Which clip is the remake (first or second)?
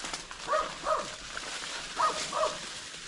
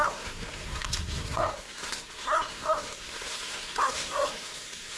second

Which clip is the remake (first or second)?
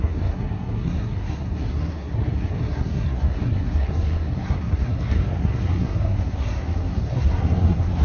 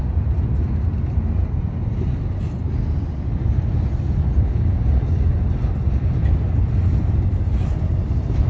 first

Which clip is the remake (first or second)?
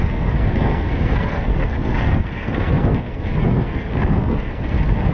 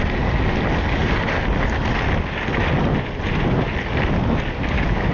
first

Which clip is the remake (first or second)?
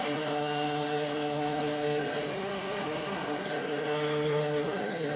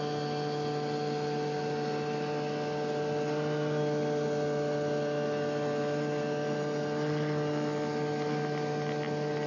first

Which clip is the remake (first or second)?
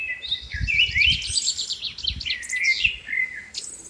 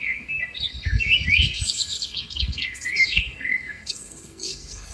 second